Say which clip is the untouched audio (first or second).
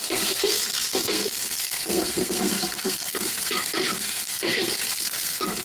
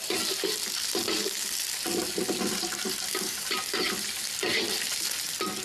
second